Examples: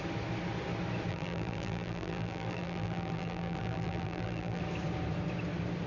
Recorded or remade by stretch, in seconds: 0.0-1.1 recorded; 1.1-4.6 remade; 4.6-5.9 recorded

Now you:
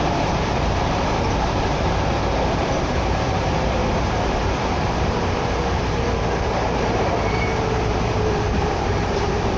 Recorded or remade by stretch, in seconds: 0.0-9.6 remade